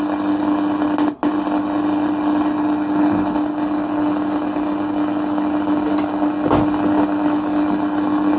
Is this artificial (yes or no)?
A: no